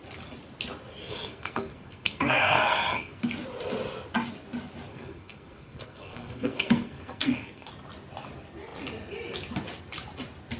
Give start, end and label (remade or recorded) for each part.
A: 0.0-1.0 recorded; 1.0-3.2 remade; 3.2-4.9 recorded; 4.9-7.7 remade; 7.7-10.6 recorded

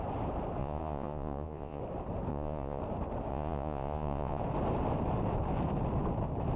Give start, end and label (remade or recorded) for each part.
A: 0.0-0.6 recorded; 0.6-1.8 remade; 1.8-2.3 recorded; 2.3-2.8 remade; 2.8-3.3 recorded; 3.3-4.4 remade; 4.4-6.6 recorded

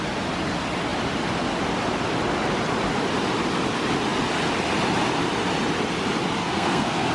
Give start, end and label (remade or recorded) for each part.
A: 0.0-6.4 recorded; 6.4-7.1 remade

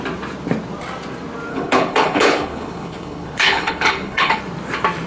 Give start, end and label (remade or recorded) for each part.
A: 0.0-1.5 recorded; 1.5-4.4 remade; 4.4-5.1 recorded